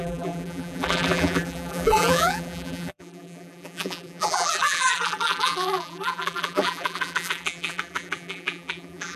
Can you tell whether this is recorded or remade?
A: remade